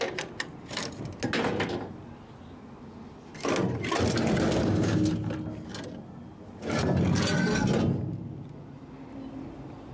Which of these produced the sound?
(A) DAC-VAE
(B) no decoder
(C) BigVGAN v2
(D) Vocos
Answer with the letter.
B